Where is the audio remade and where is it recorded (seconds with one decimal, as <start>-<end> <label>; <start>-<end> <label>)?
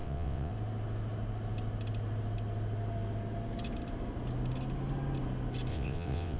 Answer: 0.0-0.5 remade; 0.5-5.7 recorded; 5.7-6.4 remade